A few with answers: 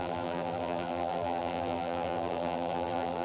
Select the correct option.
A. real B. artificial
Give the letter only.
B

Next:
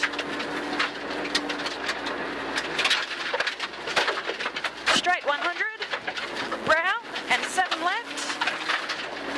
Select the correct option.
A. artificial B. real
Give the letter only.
B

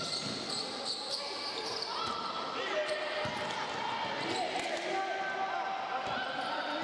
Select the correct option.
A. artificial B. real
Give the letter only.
B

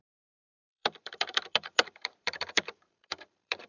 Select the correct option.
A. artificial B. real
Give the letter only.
A